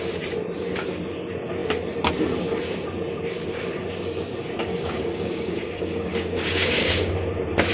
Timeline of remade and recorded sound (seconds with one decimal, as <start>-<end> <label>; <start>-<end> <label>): 0.0-4.6 recorded; 4.6-7.1 remade; 7.1-7.7 recorded